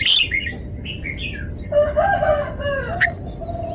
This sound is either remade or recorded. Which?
recorded